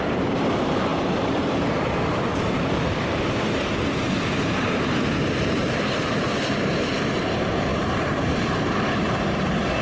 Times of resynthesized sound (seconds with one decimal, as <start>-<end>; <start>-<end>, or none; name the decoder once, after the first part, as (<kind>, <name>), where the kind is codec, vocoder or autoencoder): 0.0-9.8 (vocoder, BigVGAN v2)